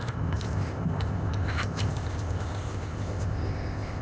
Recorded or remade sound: remade